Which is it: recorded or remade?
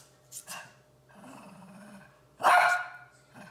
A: recorded